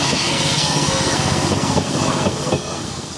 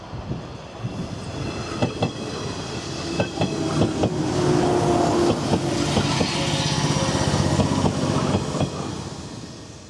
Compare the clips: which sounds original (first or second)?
second